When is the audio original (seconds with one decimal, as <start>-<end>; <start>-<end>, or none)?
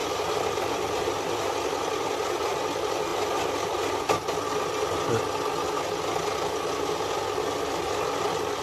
0.0-0.6; 3.1-7.7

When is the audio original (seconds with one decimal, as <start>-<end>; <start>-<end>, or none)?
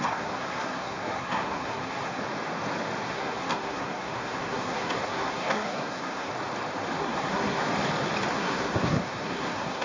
2.2-3.1; 6.3-7.0; 7.7-8.3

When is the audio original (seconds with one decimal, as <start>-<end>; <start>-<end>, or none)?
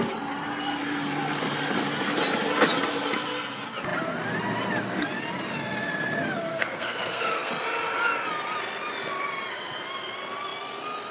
0.0-6.5; 7.5-11.1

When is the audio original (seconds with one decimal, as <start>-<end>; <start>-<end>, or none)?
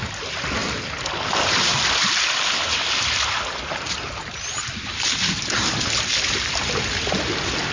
none